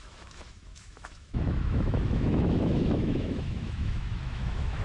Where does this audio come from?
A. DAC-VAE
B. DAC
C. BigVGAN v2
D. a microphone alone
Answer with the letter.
A